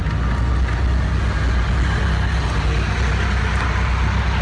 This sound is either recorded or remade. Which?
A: recorded